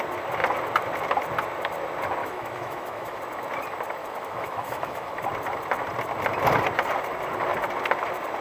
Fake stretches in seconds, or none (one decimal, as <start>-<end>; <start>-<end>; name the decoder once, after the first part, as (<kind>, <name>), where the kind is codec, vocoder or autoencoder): 2.2-3.2 (autoencoder, DAC-VAE); 4.0-5.2